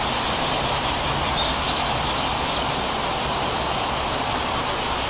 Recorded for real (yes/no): yes